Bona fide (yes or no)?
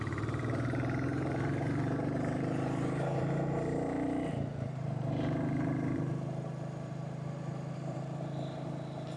no